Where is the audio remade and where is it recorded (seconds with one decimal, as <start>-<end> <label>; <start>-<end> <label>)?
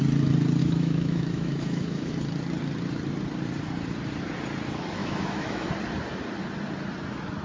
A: 0.0-0.6 recorded; 0.6-2.1 remade; 2.1-5.0 recorded; 5.0-5.7 remade; 5.7-7.4 recorded